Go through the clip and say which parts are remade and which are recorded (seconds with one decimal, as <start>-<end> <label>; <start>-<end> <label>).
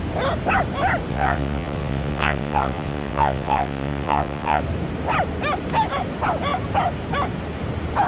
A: 0.0-1.1 recorded; 1.1-4.6 remade; 4.6-8.1 recorded